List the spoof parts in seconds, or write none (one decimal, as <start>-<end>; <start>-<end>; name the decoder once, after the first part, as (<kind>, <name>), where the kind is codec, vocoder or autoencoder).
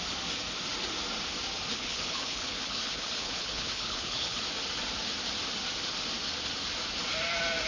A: 1.7-4.4 (codec, HILCodec)